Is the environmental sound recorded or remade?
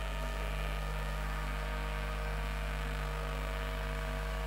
remade